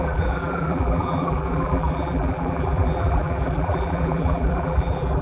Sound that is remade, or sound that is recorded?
remade